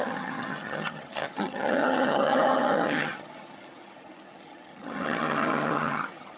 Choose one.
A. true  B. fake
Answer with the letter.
B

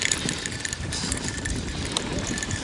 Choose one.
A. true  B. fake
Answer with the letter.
B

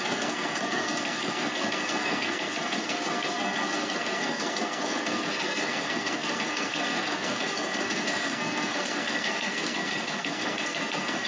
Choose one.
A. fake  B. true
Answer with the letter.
A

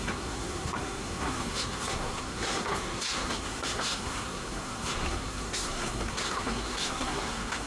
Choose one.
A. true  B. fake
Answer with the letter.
B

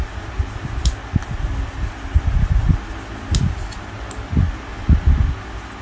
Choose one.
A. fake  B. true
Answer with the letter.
B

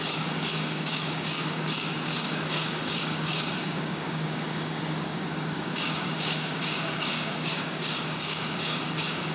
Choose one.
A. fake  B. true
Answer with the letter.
A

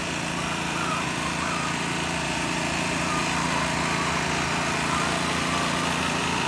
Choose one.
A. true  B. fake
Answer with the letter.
B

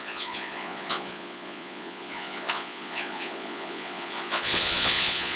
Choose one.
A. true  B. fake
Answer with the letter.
B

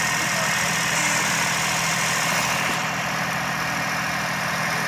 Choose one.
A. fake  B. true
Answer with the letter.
B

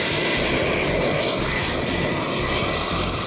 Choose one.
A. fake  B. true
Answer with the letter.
B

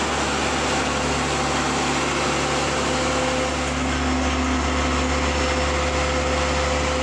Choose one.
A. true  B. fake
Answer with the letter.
A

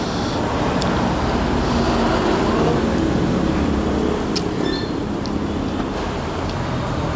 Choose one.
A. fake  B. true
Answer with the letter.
B